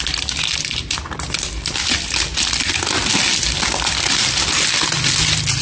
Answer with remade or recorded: recorded